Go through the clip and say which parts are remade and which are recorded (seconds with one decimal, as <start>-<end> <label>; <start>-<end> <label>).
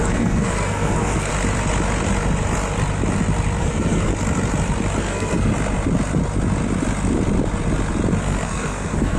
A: 0.0-1.3 remade; 1.3-3.6 recorded; 3.6-4.1 remade; 4.1-5.0 recorded; 5.0-5.5 remade; 5.5-8.2 recorded; 8.2-9.2 remade